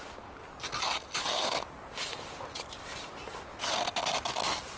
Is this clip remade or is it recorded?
recorded